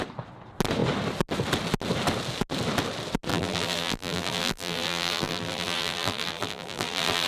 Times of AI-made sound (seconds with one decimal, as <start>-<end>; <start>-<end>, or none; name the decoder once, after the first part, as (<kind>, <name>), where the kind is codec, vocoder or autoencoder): 3.3-7.3 (vocoder, BigVGAN v2)